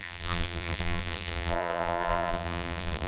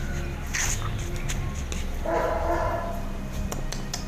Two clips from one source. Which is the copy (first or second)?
first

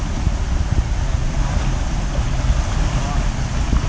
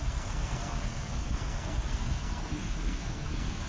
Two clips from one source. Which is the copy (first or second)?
second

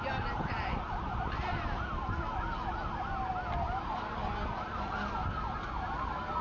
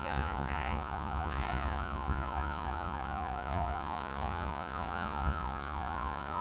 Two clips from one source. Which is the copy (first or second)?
second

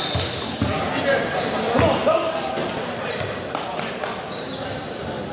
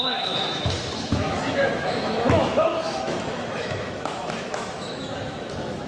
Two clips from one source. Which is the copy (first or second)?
second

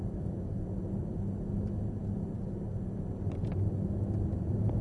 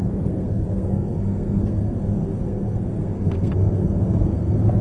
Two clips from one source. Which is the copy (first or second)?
second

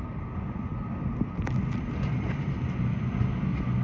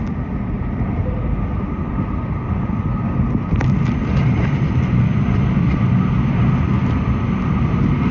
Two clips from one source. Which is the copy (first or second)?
second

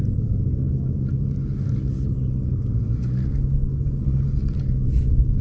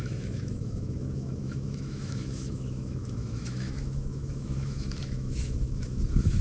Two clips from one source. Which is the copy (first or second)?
second